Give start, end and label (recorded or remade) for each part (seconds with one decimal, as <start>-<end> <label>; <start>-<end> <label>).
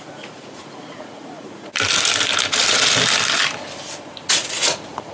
0.0-1.7 remade; 1.7-4.2 recorded; 4.2-5.1 remade